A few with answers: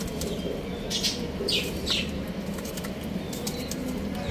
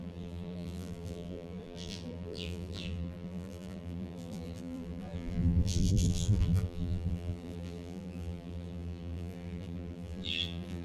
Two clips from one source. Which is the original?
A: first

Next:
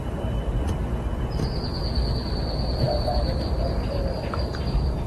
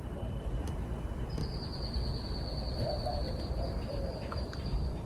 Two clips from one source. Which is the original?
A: first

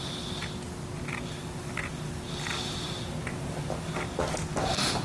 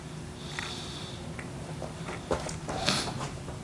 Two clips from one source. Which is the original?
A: first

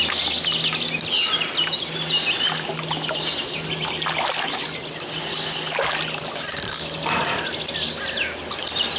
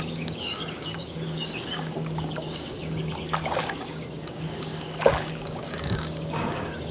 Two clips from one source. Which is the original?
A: first